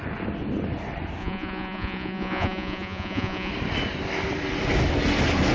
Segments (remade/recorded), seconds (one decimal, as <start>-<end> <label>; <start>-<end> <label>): 0.0-1.2 recorded; 1.2-3.5 remade; 3.5-5.5 recorded